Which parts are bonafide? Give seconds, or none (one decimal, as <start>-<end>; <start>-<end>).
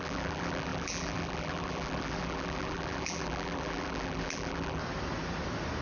4.8-5.8